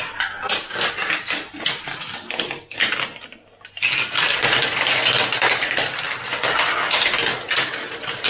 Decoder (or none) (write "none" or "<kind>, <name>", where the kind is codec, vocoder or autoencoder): none